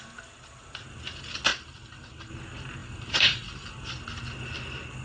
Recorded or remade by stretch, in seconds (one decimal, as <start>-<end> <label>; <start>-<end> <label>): 0.0-1.5 recorded; 1.5-2.3 remade; 2.3-2.8 recorded; 2.8-3.7 remade; 3.7-5.0 recorded